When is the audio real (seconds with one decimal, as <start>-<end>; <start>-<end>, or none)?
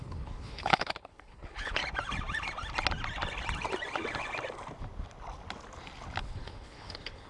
1.8-6.2